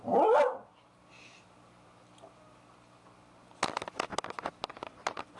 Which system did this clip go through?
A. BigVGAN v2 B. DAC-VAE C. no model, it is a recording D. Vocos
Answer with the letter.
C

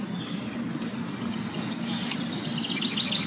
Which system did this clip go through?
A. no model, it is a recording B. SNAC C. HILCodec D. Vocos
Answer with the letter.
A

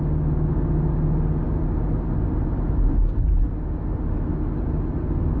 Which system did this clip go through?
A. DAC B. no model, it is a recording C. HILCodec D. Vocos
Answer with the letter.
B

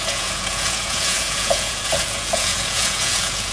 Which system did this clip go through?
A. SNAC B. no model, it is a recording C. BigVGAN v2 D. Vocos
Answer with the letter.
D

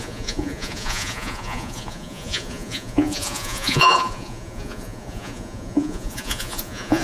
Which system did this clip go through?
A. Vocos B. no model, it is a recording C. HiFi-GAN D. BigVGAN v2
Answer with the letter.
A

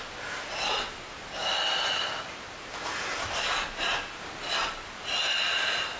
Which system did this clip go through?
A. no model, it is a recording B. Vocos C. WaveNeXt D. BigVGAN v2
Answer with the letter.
A